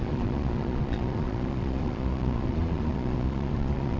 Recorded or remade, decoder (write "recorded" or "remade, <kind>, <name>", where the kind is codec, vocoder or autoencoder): remade, vocoder, Vocos